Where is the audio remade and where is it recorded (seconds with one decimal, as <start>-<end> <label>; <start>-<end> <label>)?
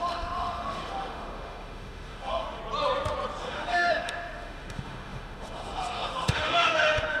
0.0-2.6 remade; 2.6-3.4 recorded; 3.4-7.2 remade